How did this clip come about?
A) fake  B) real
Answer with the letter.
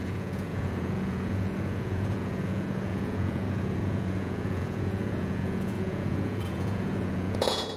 A